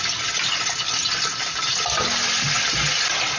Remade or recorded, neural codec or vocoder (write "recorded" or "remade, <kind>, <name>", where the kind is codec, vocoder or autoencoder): recorded